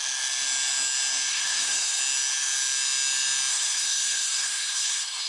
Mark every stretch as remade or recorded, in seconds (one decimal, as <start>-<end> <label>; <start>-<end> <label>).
0.0-1.3 recorded; 1.3-2.0 remade; 2.0-3.5 recorded; 3.5-5.3 remade